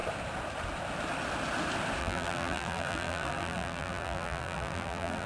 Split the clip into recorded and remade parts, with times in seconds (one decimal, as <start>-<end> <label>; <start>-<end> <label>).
0.0-2.0 recorded; 2.0-5.3 remade